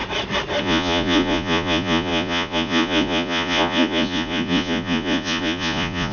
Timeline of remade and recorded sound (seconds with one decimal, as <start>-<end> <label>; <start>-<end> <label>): 0.0-0.6 recorded; 0.6-6.1 remade